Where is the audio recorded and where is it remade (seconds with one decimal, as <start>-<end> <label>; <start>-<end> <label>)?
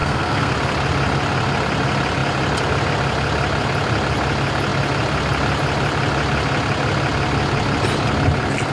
0.0-0.5 remade; 0.5-8.7 recorded